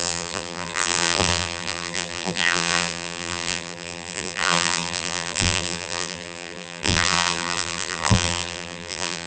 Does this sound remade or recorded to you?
remade